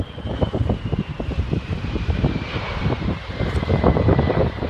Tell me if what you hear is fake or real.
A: fake